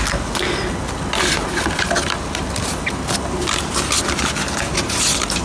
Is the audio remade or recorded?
recorded